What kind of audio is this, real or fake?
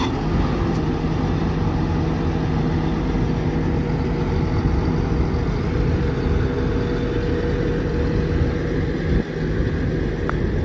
real